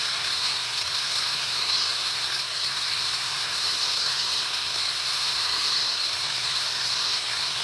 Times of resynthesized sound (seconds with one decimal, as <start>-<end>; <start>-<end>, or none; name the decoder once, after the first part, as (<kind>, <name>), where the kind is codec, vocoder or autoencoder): 0.0-7.6 (codec, SNAC)

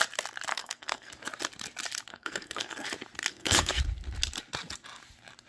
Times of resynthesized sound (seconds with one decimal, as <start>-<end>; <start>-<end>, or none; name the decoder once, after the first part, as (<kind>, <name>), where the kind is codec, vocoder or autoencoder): 0.5-1.1 (codec, SNAC); 2.1-2.9; 3.3-3.8

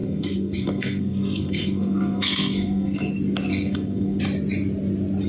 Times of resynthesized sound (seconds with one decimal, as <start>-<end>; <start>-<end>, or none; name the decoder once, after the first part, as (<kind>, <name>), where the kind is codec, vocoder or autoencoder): 0.0-3.1 (codec, SNAC); 3.5-4.2

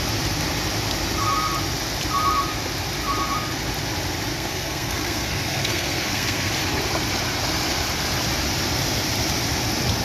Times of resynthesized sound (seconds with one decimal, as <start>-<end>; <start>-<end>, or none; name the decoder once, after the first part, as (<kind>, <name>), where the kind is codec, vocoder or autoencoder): 4.3-6.5 (codec, SNAC)

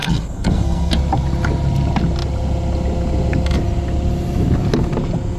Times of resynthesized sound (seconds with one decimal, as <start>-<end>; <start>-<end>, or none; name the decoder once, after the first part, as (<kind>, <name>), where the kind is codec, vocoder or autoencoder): 0.0-0.9 (codec, SNAC)